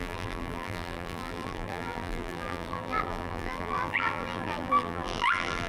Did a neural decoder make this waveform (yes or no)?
yes